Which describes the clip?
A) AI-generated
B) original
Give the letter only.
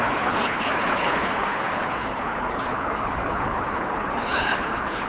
A